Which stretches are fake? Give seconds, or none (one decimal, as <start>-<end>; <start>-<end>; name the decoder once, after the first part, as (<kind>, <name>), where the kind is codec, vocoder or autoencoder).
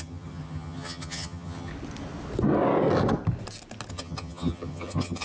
0.0-1.7 (vocoder, HiFi-GAN); 3.9-5.2